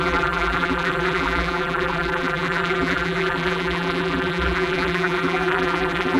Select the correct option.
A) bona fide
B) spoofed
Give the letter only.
B